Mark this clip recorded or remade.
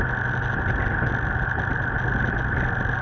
recorded